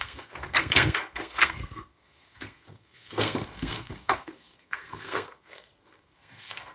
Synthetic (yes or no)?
yes